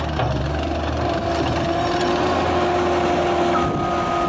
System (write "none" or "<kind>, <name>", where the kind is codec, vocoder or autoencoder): none